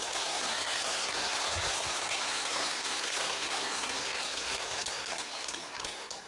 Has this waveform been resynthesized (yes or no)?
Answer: yes